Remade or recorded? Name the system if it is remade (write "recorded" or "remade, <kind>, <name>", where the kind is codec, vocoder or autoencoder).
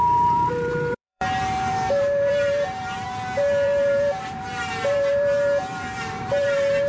remade, vocoder, BigVGAN v2